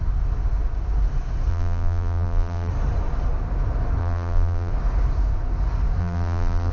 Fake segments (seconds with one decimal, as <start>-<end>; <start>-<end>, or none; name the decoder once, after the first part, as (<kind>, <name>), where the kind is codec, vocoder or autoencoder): 1.5-2.7 (vocoder, BigVGAN v2); 4.0-4.7; 6.0-6.7